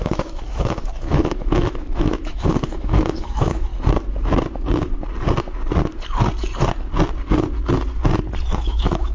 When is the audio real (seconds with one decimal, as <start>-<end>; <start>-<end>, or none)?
3.7-8.6